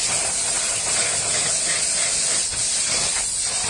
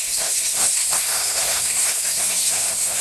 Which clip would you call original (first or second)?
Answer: first